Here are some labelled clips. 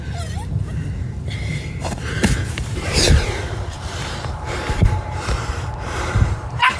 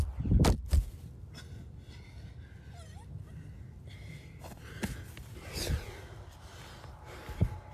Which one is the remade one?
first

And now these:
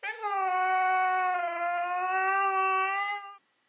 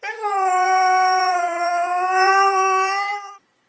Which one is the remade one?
second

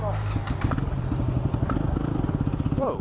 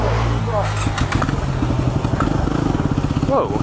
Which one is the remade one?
first